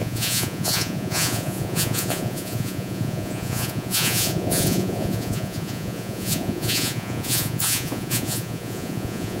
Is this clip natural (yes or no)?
no